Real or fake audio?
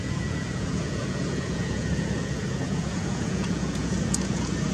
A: fake